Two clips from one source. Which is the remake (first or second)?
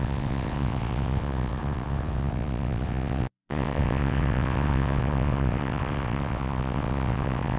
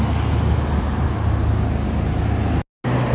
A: first